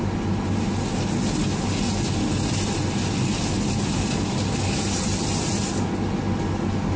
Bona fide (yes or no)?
yes